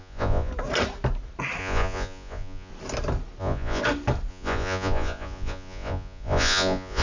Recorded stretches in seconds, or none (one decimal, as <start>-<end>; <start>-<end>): 0.5-1.6; 2.7-3.4; 3.8-4.3